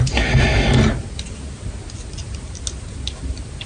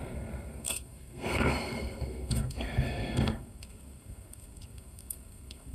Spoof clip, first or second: second